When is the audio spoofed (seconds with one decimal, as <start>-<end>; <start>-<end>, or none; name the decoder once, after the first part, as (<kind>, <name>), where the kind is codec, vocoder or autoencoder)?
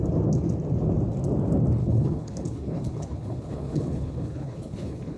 1.8-5.2 (codec, HILCodec)